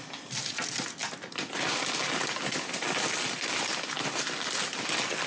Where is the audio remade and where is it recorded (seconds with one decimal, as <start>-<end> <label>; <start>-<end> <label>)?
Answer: 0.0-5.3 recorded